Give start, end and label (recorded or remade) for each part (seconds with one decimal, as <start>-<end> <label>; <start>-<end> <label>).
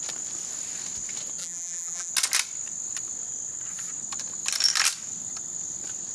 0.0-1.4 recorded; 1.4-2.1 remade; 2.1-6.1 recorded